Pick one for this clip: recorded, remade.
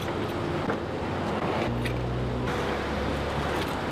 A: recorded